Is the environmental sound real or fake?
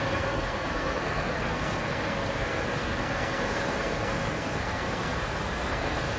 fake